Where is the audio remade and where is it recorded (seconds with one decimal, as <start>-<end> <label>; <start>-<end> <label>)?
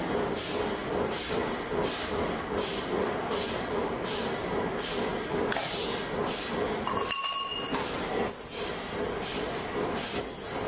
0.0-0.8 recorded; 0.8-2.4 remade; 2.4-10.7 recorded